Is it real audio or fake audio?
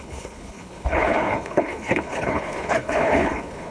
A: fake